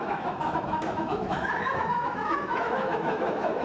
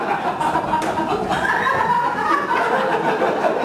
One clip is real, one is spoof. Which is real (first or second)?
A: second